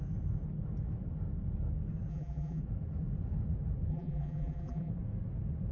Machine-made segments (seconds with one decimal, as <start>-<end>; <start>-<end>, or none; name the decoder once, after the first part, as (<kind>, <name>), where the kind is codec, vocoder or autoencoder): 2.1-2.6 (vocoder, BigVGAN v2); 3.9-4.9